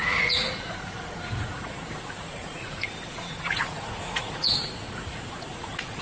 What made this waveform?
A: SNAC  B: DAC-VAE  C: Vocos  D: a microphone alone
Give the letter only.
C